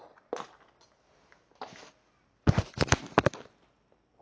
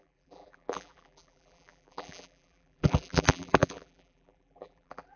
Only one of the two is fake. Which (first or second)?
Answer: second